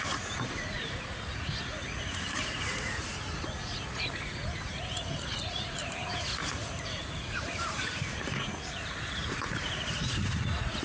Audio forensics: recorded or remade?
remade